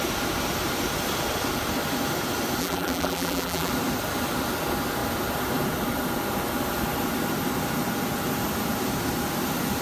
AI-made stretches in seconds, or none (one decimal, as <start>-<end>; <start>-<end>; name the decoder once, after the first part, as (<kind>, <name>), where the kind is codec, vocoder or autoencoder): 2.6-3.7 (vocoder, BigVGAN v2)